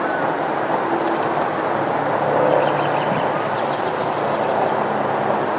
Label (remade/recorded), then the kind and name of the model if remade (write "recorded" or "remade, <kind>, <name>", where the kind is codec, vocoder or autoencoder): recorded